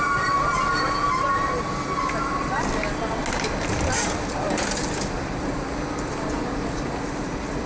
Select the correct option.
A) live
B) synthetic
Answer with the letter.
A